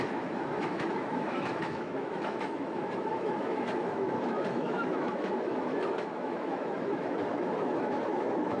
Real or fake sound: fake